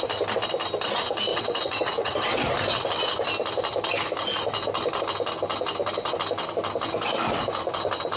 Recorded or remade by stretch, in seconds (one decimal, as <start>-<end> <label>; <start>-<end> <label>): 0.0-1.3 recorded; 1.3-2.4 remade; 2.4-8.2 recorded